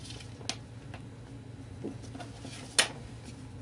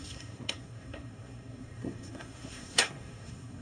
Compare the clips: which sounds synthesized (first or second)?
second